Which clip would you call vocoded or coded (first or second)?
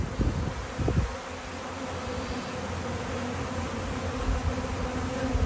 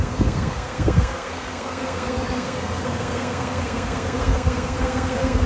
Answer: second